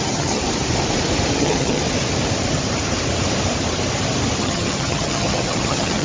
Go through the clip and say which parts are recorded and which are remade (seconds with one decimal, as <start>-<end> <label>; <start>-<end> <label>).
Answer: 0.0-0.4 remade; 0.4-1.4 recorded; 1.4-1.8 remade; 1.8-4.4 recorded; 4.4-6.0 remade